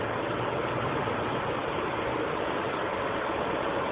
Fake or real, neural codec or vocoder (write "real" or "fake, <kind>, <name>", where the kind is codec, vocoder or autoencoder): real